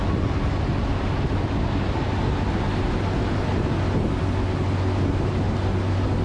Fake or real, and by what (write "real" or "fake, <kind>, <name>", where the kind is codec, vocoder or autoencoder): real